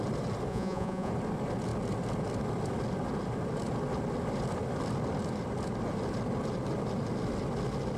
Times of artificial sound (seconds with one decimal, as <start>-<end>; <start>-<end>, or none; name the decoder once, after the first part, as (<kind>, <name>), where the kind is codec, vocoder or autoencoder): 0.5-1.1 (vocoder, Vocos)